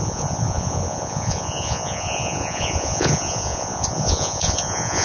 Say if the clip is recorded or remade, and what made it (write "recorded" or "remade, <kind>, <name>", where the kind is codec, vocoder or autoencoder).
remade, vocoder, Vocos